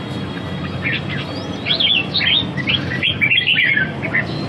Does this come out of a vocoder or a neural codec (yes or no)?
no